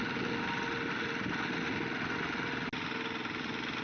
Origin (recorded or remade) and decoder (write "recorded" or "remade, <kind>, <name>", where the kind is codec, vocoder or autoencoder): recorded